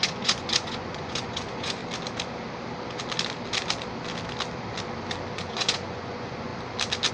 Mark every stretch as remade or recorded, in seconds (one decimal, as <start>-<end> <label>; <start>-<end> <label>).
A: 0.0-1.8 remade; 1.8-5.3 recorded; 5.3-6.5 remade; 6.5-7.1 recorded